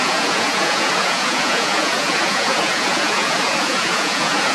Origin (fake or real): fake